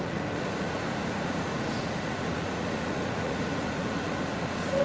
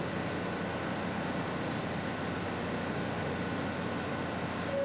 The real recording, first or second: second